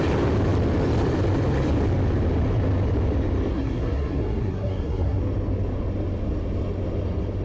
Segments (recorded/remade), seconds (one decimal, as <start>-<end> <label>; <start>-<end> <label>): 0.0-3.5 recorded; 3.5-5.2 remade; 5.2-7.4 recorded